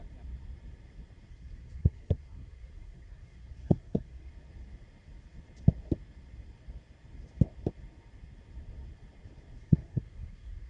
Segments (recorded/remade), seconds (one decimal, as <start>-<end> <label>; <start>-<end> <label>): 0.0-1.3 recorded; 1.3-4.3 remade; 4.3-9.6 recorded; 9.6-10.7 remade